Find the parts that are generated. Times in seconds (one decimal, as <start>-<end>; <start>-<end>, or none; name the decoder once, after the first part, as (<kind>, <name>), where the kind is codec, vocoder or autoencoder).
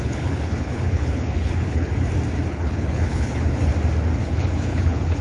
0.0-1.9 (codec, HILCodec); 2.5-3.7; 4.2-5.2